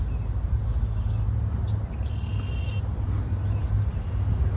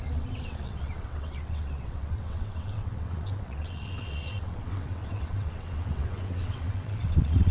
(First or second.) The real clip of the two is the first